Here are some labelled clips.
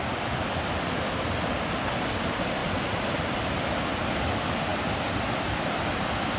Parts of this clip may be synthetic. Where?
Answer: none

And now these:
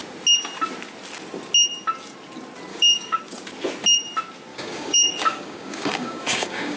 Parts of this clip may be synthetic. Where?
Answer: 2.7-3.2 (codec, DAC); 4.5-6.8